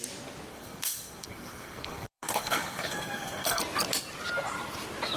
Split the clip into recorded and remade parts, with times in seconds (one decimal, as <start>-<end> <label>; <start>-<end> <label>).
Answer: 0.0-0.5 recorded; 0.5-3.6 remade; 3.6-5.2 recorded